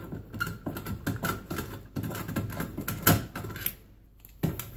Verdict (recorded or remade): recorded